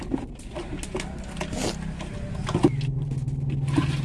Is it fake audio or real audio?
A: real